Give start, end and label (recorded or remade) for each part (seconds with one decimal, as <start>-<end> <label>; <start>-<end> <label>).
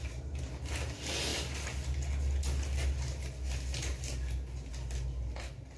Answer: 0.0-5.8 recorded